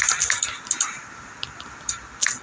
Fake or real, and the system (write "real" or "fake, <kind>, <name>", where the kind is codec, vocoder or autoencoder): real